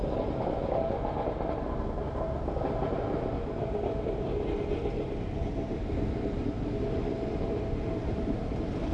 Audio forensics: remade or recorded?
recorded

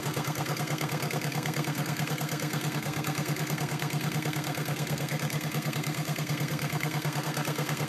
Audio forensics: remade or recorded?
remade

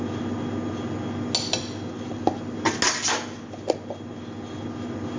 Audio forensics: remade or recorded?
recorded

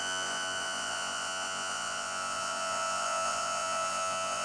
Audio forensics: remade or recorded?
remade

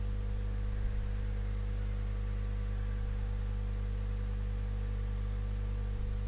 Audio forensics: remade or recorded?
recorded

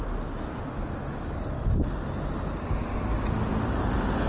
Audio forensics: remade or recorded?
recorded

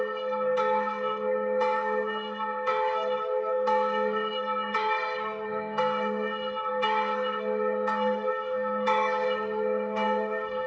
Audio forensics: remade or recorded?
remade